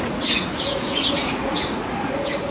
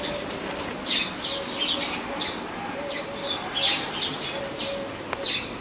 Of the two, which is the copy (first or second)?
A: first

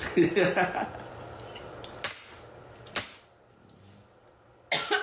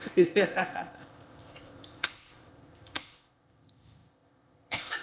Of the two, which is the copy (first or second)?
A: second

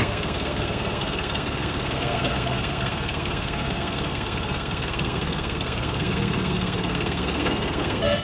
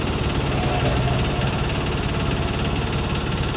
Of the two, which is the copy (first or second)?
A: first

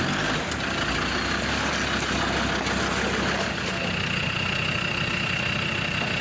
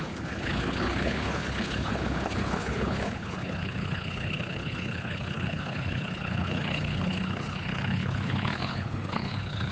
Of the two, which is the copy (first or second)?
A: second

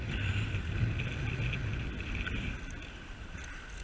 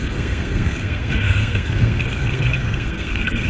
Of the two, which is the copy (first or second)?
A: second